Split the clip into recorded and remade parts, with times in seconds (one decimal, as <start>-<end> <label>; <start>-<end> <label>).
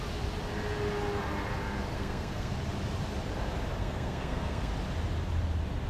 0.0-1.9 recorded; 1.9-2.5 remade; 2.5-3.8 recorded; 3.8-4.7 remade; 4.7-5.9 recorded